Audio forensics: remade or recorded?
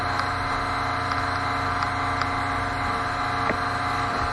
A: recorded